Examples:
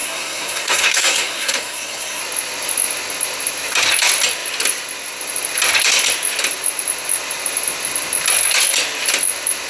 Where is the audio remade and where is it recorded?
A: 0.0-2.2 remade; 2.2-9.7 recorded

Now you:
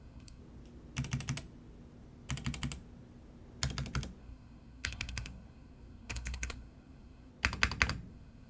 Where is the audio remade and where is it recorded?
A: 0.0-0.4 remade; 0.4-4.2 recorded; 4.2-7.3 remade; 7.3-8.1 recorded; 8.1-8.5 remade

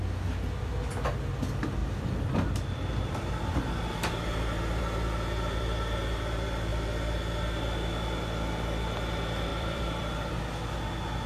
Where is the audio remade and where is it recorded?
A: 0.0-9.5 recorded; 9.5-10.3 remade; 10.3-11.3 recorded

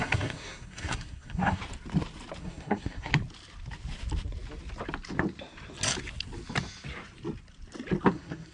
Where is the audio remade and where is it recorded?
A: 0.0-1.6 remade; 1.6-2.4 recorded; 2.4-3.1 remade; 3.1-8.1 recorded; 8.1-8.5 remade

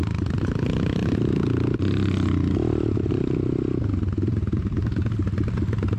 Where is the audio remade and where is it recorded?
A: 0.0-6.0 recorded